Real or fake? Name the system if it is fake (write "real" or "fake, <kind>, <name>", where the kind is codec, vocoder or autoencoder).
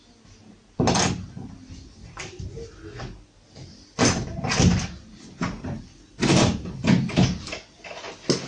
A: real